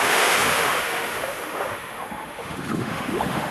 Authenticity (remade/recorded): remade